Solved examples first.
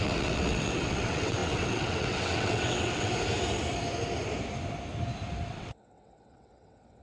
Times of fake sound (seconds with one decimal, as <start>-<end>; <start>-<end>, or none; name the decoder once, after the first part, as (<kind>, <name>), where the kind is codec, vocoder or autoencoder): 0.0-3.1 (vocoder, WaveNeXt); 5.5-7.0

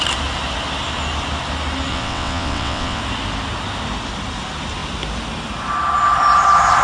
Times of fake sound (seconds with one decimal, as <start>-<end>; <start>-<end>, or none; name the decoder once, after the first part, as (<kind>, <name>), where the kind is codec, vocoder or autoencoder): 1.9-3.0 (vocoder, WaveNeXt)

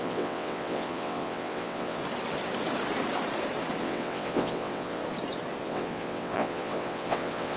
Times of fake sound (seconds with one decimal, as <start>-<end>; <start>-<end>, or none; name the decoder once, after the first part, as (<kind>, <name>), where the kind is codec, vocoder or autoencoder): 0.0-2.0 (vocoder, WaveNeXt); 3.8-5.0; 5.6-7.6

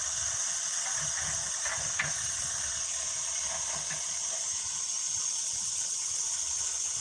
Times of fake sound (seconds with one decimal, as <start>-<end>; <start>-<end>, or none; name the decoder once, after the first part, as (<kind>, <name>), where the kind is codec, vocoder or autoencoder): 5.4-6.2 (vocoder, WaveNeXt)